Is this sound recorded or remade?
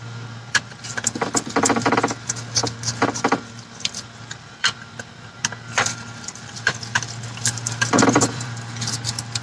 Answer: remade